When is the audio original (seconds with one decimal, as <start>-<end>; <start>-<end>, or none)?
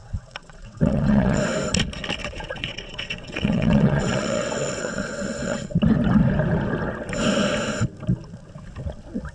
1.4-2.2; 5.8-9.3